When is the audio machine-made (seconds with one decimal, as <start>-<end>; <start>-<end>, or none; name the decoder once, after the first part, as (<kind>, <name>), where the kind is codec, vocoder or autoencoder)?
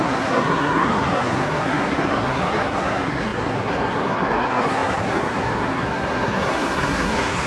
0.0-7.5 (codec, SNAC)